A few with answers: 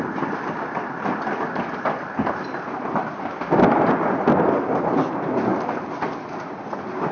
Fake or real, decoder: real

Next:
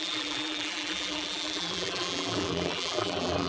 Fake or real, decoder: fake, vocoder, BigVGAN v2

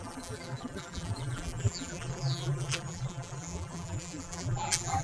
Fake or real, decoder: fake, vocoder, BigVGAN v2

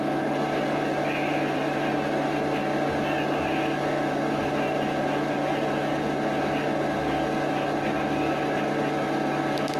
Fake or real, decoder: real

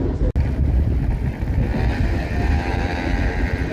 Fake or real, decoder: real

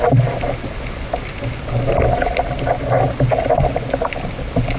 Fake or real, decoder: real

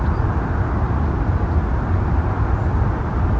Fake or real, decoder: real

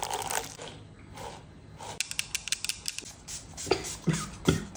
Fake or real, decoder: real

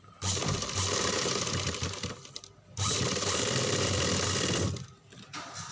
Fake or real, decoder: fake, vocoder, BigVGAN v2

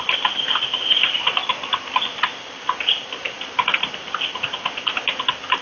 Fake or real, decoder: real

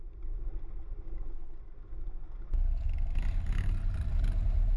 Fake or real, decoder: real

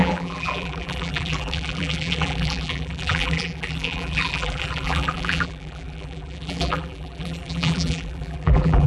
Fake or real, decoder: fake, vocoder, BigVGAN v2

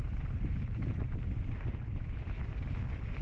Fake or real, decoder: real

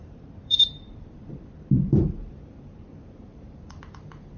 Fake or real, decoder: fake, vocoder, BigVGAN v2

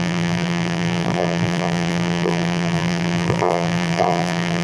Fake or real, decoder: fake, vocoder, BigVGAN v2